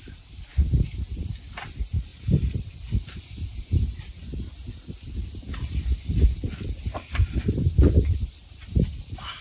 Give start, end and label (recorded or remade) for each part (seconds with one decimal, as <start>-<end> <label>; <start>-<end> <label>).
0.0-9.4 recorded